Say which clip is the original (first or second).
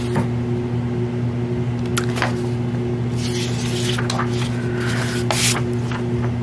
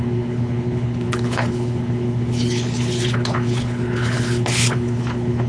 first